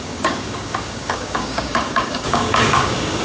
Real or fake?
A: fake